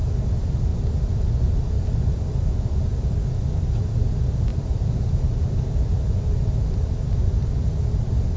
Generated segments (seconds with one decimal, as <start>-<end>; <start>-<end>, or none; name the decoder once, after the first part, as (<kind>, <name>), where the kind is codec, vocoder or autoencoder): 4.5-6.1 (vocoder, BigVGAN v2)